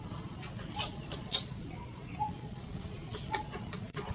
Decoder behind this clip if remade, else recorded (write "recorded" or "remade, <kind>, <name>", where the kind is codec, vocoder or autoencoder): remade, vocoder, Vocos